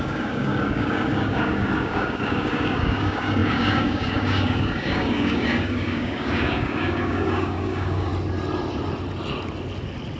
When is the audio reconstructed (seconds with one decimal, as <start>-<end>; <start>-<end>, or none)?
0.0-8.1